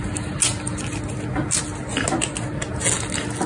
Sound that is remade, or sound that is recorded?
recorded